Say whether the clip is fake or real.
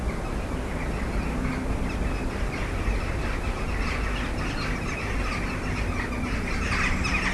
real